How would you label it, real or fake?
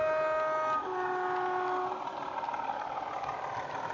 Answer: real